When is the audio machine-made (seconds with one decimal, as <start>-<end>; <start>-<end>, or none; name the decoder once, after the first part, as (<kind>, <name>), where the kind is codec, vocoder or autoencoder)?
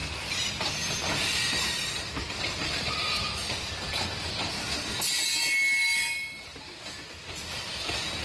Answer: 2.2-2.9 (vocoder, BigVGAN v2); 3.8-4.5